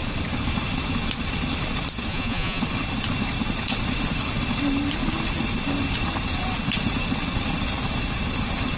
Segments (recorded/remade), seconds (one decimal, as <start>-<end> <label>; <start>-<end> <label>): 0.0-2.1 recorded; 2.1-2.6 remade; 2.6-8.8 recorded

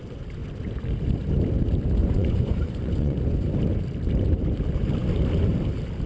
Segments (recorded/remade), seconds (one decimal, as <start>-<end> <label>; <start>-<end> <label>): 0.0-2.0 recorded; 2.0-3.2 remade; 3.2-6.1 recorded

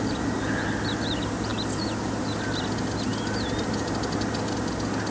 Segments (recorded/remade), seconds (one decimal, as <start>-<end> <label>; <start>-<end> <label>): 0.0-5.1 recorded

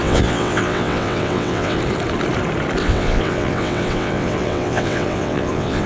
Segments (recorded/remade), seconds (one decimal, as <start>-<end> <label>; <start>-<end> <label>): 0.0-1.8 remade; 1.8-2.8 recorded; 2.8-5.9 remade

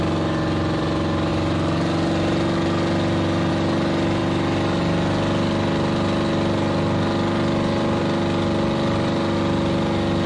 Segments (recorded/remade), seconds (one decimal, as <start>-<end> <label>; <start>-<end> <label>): 0.0-10.3 recorded